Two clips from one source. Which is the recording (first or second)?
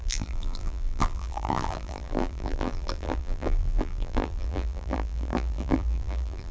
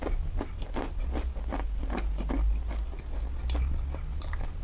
second